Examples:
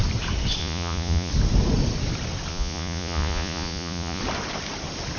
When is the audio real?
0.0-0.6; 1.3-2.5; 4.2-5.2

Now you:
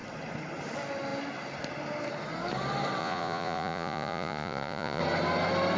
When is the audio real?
0.0-3.0; 5.0-5.8

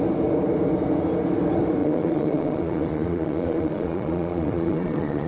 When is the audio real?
0.0-1.8

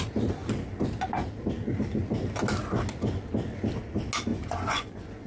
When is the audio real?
0.0-4.3

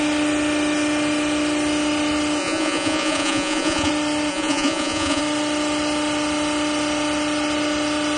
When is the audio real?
0.0-2.4; 3.9-4.3; 5.2-8.2

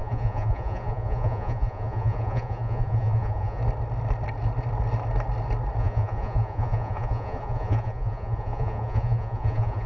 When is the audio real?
3.6-5.8

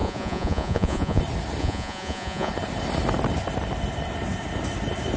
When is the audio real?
1.2-1.6; 2.5-5.2

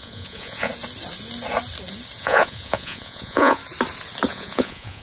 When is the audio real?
0.7-2.2; 3.6-4.3